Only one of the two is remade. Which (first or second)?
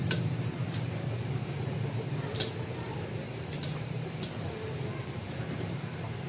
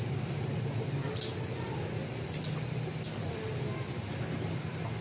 first